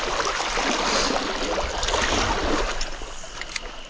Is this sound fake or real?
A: real